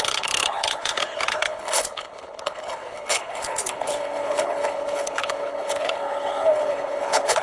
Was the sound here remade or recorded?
remade